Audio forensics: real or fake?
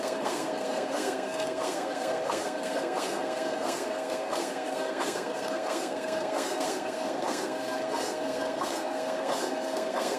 fake